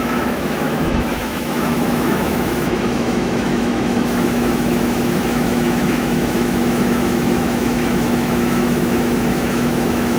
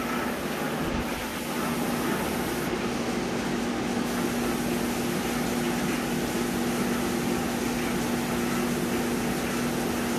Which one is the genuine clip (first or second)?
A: second